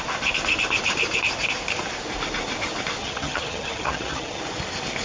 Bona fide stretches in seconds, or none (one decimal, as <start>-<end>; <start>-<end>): 0.0-3.0; 4.4-5.0